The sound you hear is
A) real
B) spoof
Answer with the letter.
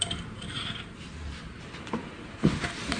B